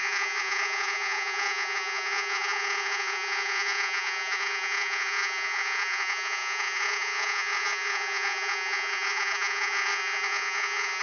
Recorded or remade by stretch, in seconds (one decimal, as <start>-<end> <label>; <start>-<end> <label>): 0.0-11.0 remade

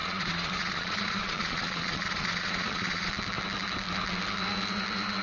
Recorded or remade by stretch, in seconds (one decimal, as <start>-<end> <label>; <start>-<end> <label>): 0.0-3.1 remade; 3.1-5.2 recorded

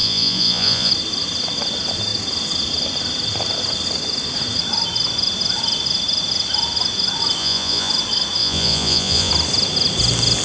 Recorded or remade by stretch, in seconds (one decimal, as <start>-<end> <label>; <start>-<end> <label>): 0.0-0.9 remade; 0.9-7.4 recorded; 7.4-7.9 remade; 7.9-8.4 recorded; 8.4-9.3 remade; 9.3-10.4 recorded

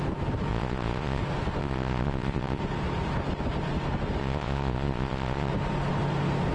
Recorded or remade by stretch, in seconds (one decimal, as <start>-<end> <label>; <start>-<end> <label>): 0.0-0.5 recorded; 0.5-1.2 remade; 1.2-1.6 recorded; 1.6-2.6 remade; 2.6-4.2 recorded; 4.2-5.5 remade; 5.5-6.5 recorded

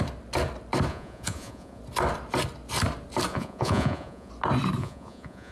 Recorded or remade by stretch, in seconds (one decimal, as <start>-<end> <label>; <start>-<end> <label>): 0.0-0.9 recorded; 0.9-1.8 remade; 1.8-3.3 recorded; 3.3-4.3 remade; 4.3-4.8 recorded; 4.8-5.5 remade

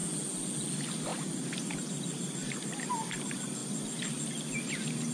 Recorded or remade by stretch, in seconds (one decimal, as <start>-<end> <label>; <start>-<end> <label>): 0.0-5.1 recorded